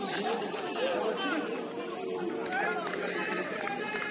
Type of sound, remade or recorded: recorded